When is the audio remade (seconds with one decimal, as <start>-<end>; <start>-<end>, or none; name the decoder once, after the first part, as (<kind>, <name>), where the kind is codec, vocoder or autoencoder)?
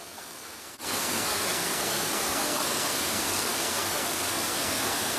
0.0-5.2 (codec, SNAC)